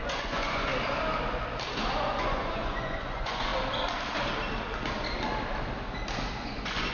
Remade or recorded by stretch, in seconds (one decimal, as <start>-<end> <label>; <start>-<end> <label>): 0.0-0.7 remade; 0.7-2.0 recorded; 2.0-3.5 remade; 3.5-6.4 recorded; 6.4-6.9 remade